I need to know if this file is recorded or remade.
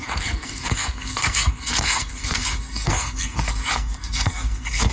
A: remade